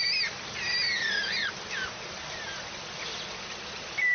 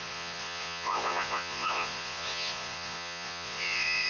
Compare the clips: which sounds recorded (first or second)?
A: first